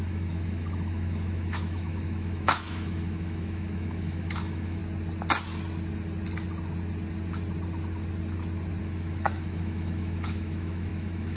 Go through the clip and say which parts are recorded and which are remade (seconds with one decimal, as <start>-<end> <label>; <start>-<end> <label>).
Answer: 0.0-4.8 remade; 4.8-8.8 recorded; 8.8-11.4 remade